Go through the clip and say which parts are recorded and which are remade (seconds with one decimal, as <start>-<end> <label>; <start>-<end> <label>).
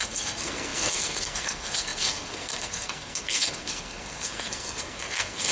0.0-5.5 remade